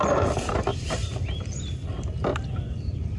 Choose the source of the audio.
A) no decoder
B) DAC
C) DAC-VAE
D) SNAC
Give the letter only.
A